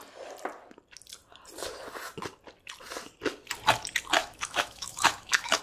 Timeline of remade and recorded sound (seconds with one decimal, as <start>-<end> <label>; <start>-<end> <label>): 0.0-4.2 recorded; 4.2-5.6 remade

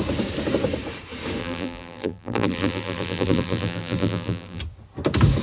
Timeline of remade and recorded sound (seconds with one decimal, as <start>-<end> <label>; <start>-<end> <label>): 0.0-1.4 recorded; 1.4-4.6 remade; 4.6-5.4 recorded

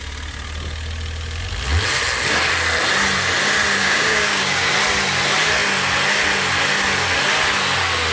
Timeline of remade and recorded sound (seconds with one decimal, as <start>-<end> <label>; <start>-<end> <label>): 0.0-3.8 recorded; 3.8-4.7 remade; 4.7-8.1 recorded

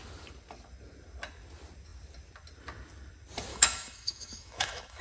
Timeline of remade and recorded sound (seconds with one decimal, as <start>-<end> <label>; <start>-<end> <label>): 0.0-3.5 recorded; 3.5-5.0 remade